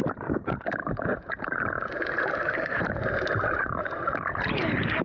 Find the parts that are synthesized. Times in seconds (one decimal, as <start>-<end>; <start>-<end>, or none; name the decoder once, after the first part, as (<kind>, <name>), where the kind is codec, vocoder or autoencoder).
0.0-5.0 (vocoder, BigVGAN v2)